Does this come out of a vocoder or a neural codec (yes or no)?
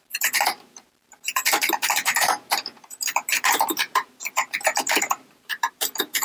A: yes